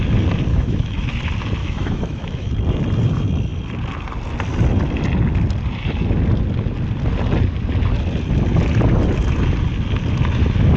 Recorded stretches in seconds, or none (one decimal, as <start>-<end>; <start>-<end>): 0.0-0.5; 1.2-1.6; 2.5-10.8